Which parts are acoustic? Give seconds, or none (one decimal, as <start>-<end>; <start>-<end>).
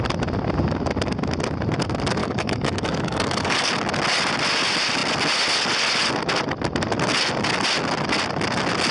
0.0-2.2; 3.7-8.9